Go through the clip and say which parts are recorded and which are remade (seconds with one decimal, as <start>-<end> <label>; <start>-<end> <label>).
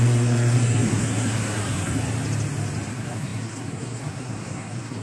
0.0-2.0 remade; 2.0-2.9 recorded; 2.9-5.0 remade